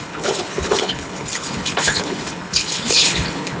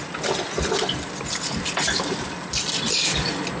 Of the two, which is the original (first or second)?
second